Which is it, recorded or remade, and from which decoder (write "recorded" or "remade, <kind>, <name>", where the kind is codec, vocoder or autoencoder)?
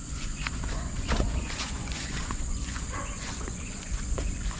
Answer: remade, vocoder, Vocos